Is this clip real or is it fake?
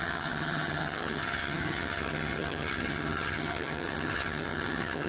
fake